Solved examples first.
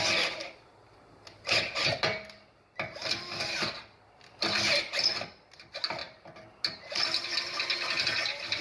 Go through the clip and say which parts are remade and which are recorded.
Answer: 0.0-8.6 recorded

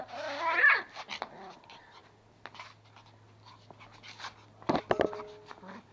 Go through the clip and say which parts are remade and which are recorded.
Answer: 0.0-5.9 recorded

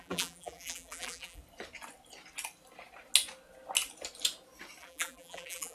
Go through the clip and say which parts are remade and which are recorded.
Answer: 0.0-1.4 remade; 1.4-4.8 recorded; 4.8-5.7 remade